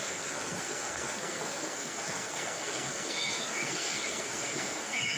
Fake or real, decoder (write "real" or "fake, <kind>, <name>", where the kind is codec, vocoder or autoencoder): fake, codec, SNAC